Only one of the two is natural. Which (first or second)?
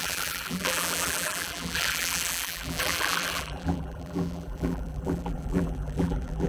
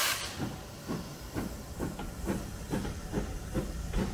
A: second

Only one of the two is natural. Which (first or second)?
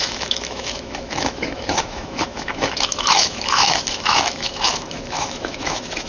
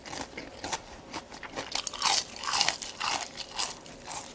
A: second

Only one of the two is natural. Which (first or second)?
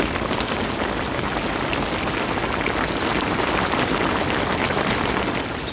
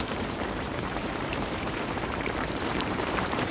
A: first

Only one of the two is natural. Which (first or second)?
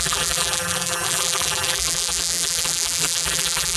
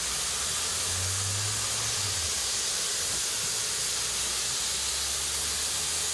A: second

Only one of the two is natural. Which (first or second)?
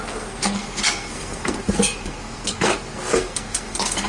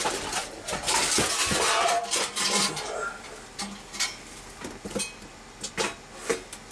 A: second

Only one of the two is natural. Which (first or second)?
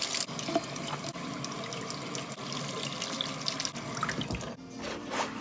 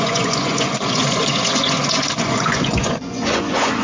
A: first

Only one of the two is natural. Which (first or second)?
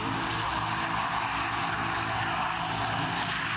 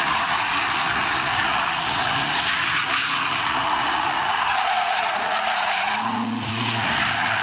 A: first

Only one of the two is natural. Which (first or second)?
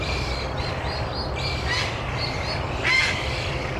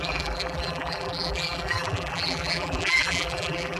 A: first